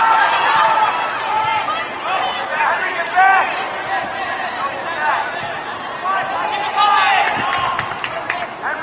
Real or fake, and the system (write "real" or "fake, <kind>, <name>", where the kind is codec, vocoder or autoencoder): real